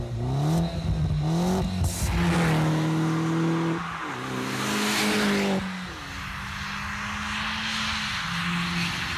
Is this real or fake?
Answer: real